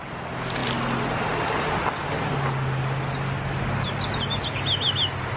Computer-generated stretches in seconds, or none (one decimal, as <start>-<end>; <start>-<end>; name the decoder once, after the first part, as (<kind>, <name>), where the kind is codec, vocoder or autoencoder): none